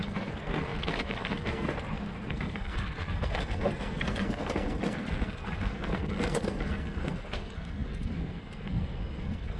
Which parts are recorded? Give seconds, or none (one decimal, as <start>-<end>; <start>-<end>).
none